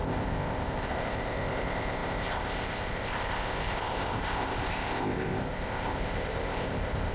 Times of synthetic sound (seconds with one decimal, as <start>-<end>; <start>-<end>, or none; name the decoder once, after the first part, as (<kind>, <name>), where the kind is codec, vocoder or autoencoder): 0.0-7.1 (codec, ZipCodec)